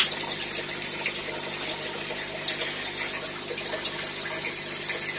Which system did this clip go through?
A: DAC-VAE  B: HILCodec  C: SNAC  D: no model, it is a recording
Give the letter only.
D